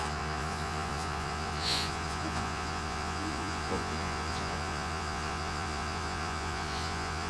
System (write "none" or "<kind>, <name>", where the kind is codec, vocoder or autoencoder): vocoder, Vocos